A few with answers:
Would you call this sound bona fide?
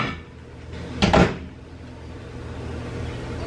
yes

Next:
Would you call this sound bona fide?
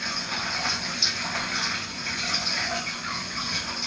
no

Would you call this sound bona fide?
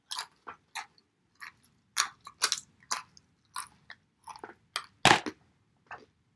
yes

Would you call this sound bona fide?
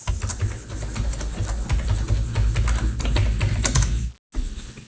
yes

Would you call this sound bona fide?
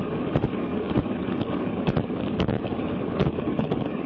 no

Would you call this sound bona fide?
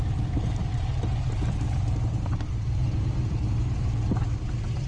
no